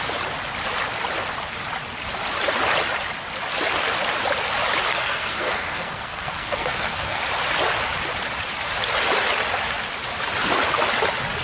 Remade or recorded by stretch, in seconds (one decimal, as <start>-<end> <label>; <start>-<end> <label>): 0.0-4.9 recorded; 4.9-7.2 remade; 7.2-11.4 recorded